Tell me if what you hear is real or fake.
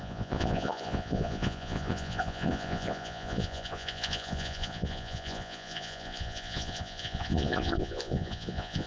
fake